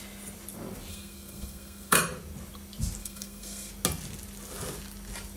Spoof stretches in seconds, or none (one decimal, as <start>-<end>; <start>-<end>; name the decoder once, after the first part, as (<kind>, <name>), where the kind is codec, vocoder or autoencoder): 0.9-2.0 (codec, SNAC); 3.0-3.7